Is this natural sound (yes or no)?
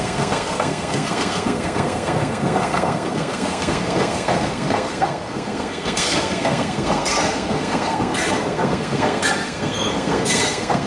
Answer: no